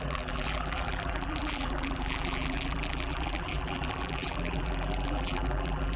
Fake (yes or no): yes